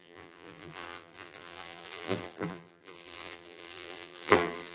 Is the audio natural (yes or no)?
no